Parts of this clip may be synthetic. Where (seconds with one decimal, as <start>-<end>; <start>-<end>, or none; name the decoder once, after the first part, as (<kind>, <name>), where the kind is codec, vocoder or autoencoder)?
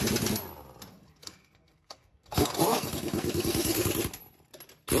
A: 0.9-3.9 (codec, SNAC)